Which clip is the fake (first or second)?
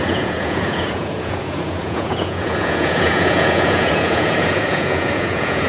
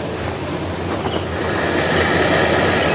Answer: first